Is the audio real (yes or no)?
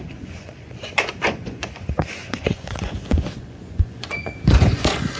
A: no